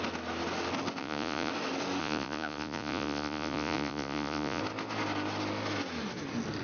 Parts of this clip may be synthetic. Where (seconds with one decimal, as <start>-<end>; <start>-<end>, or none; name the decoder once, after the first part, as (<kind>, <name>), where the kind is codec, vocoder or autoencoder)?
1.0-1.5 (vocoder, Vocos); 2.0-4.6